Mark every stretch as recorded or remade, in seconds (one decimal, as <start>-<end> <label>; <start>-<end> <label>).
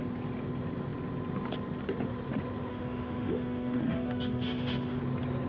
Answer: 0.0-2.7 recorded; 2.7-5.0 remade; 5.0-5.5 recorded